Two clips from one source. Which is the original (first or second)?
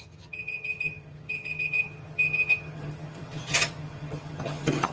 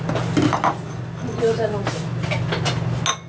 second